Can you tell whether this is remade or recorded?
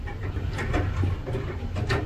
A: recorded